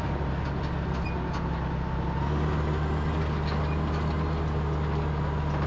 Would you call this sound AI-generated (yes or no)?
no